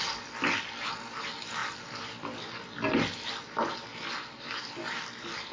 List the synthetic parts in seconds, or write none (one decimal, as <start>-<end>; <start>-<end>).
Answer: none